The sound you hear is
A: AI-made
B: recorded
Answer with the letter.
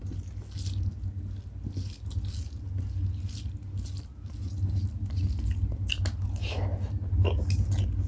B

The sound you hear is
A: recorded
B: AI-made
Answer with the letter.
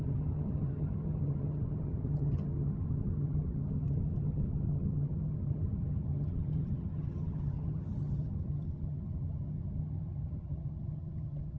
B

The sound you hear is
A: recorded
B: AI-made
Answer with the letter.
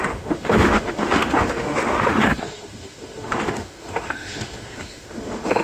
B